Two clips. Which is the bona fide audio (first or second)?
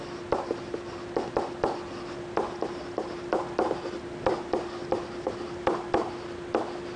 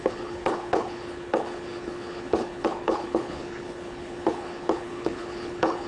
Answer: first